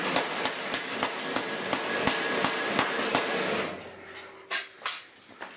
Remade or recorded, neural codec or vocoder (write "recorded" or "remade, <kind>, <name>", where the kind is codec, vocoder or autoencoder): recorded